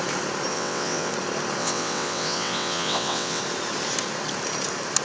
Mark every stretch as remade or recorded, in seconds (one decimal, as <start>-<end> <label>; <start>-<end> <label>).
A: 0.0-0.5 recorded; 0.5-1.1 remade; 1.1-1.6 recorded; 1.6-3.4 remade; 3.4-5.0 recorded